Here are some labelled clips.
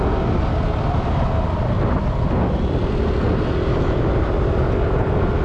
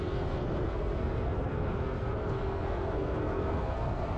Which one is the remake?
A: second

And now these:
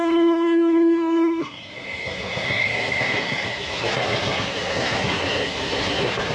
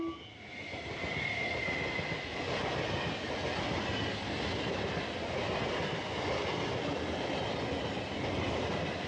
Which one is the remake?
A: first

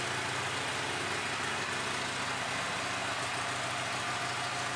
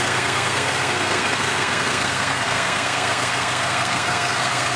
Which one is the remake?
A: second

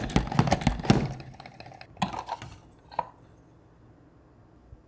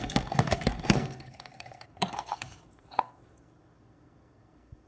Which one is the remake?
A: second